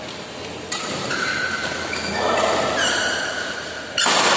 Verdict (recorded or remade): recorded